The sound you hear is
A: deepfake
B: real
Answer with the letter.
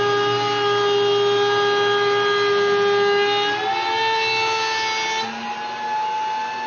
B